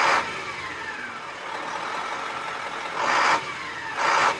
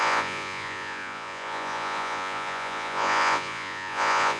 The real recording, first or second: first